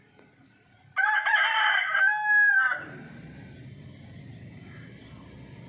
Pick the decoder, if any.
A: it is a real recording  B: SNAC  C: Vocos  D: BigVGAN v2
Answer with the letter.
A